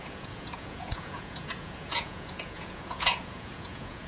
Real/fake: fake